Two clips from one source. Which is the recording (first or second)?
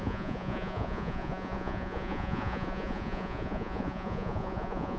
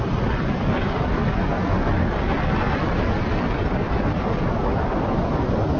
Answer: second